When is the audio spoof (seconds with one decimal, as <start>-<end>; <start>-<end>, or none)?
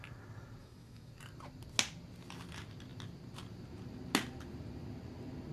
0.6-1.1